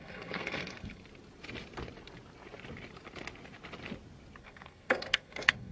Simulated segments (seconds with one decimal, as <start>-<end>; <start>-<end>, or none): 0.0-1.0; 4.4-5.7

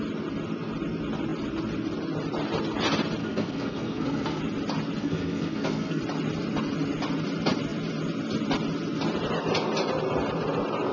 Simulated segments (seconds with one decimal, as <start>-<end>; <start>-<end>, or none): 3.2-4.4; 5.0-6.0

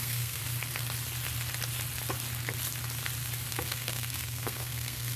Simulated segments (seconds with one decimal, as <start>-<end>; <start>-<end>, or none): 0.0-0.4; 3.5-5.2

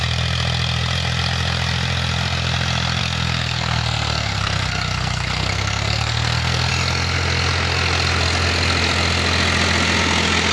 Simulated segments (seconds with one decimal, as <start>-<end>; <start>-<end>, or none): 3.0-6.7

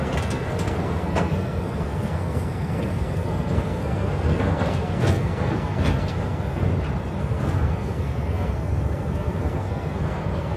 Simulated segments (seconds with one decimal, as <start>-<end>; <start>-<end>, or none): 0.0-6.7; 7.2-10.6

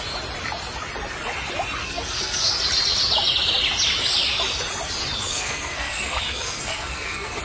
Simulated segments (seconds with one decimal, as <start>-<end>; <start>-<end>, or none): 1.8-2.5; 5.3-7.4